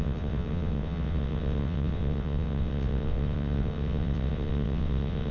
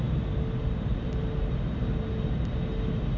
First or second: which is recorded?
second